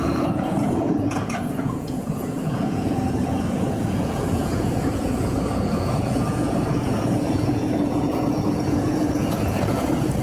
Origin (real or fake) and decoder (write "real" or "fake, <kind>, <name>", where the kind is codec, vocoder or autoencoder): fake, vocoder, Vocos